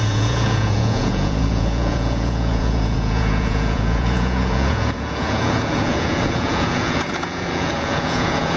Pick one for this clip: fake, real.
fake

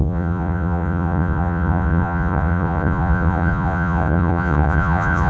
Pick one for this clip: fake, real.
fake